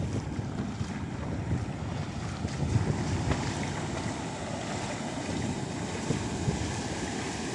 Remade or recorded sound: recorded